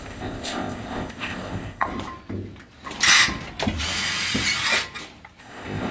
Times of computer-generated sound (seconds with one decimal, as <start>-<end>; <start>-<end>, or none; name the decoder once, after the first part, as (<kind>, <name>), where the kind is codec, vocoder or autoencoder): 0.0-1.9 (codec, ZipCodec); 5.4-5.9